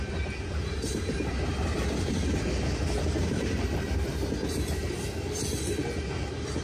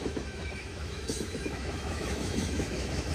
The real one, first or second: first